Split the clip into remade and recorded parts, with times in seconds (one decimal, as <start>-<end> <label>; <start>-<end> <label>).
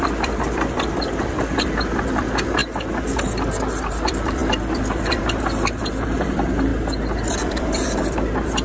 0.0-2.6 remade; 2.6-3.9 recorded; 3.9-6.7 remade; 6.7-7.3 recorded; 7.3-8.6 remade